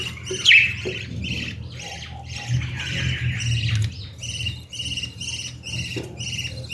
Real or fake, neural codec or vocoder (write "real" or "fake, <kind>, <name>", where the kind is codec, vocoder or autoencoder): real